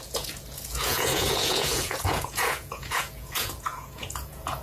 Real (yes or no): no